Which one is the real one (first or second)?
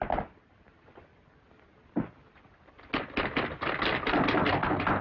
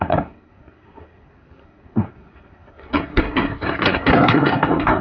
first